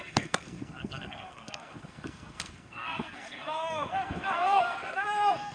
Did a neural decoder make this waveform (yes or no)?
yes